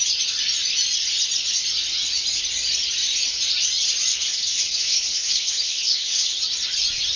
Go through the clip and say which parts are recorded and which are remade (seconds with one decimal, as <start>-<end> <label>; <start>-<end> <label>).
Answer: 0.0-4.1 recorded; 4.1-6.4 remade; 6.4-7.2 recorded